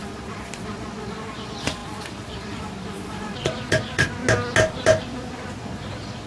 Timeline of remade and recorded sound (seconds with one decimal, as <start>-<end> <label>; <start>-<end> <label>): 0.0-4.2 remade; 4.2-5.0 recorded; 5.0-6.3 remade